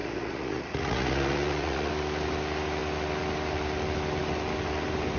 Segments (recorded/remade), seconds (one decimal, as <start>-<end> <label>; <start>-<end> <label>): 0.0-1.9 remade; 1.9-5.2 recorded